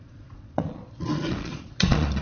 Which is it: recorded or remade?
remade